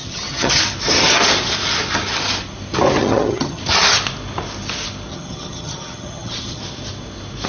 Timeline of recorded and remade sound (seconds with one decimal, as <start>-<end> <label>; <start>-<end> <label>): 0.0-0.6 remade; 0.6-3.0 recorded; 3.0-3.6 remade; 3.6-5.1 recorded; 5.1-6.6 remade; 6.6-7.5 recorded